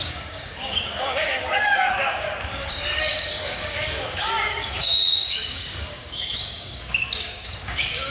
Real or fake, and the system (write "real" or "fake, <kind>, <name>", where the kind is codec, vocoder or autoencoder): fake, codec, DAC